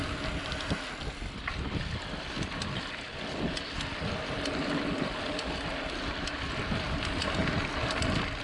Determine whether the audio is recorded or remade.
recorded